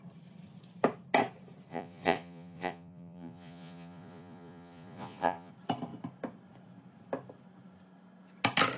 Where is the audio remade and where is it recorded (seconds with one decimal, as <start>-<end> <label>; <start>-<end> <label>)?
0.0-1.7 recorded; 1.7-5.5 remade; 5.5-8.8 recorded